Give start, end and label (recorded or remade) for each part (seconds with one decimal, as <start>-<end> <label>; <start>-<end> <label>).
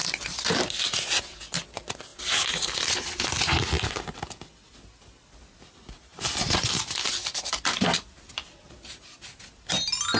0.0-0.6 remade; 0.6-2.1 recorded; 2.1-3.2 remade; 3.2-6.1 recorded; 6.1-8.9 remade; 8.9-10.2 recorded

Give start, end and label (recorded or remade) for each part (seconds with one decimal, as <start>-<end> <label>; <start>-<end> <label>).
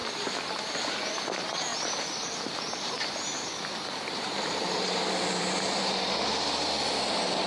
0.0-1.7 recorded; 1.7-6.1 remade; 6.1-7.5 recorded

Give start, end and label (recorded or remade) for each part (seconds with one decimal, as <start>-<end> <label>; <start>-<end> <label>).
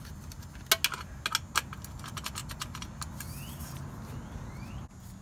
0.0-5.2 recorded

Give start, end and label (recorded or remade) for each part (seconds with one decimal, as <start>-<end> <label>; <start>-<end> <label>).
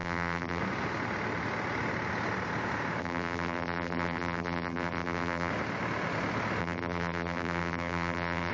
0.0-0.6 remade; 0.6-3.0 recorded; 3.0-5.5 remade; 5.5-6.6 recorded; 6.6-8.5 remade